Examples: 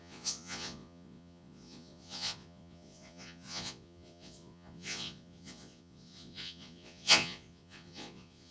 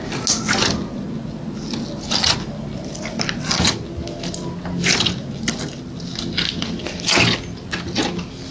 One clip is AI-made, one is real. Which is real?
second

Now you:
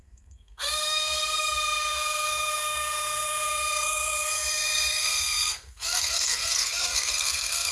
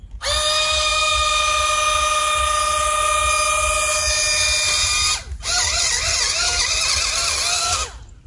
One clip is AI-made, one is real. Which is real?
second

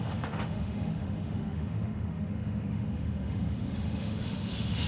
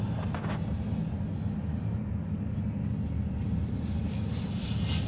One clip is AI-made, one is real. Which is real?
second